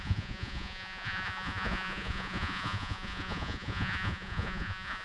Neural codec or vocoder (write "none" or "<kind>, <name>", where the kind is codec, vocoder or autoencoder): vocoder, Vocos